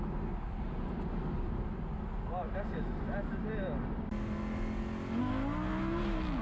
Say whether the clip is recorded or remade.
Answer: recorded